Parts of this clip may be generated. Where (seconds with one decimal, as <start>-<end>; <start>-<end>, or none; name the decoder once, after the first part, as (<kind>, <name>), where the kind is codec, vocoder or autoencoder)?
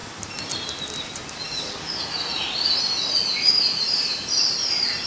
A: none